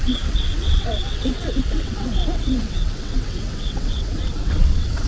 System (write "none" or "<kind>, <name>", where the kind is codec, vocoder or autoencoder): vocoder, WaveNeXt